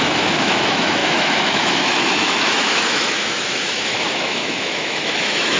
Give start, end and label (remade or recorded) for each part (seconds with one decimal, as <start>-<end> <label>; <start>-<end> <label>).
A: 0.0-5.6 remade